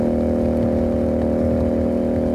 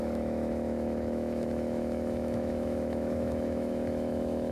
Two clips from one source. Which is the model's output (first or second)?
second